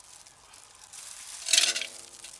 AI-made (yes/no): no